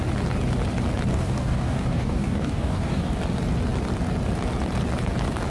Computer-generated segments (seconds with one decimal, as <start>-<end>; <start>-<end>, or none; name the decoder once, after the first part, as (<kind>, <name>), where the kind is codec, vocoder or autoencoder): 1.1-3.2 (codec, DAC)